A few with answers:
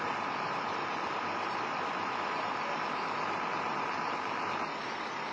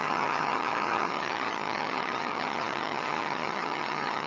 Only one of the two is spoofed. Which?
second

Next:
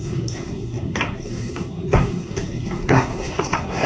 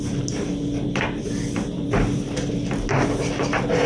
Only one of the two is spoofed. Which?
first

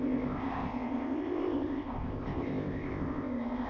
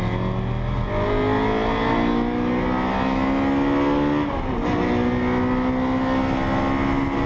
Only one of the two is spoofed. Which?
first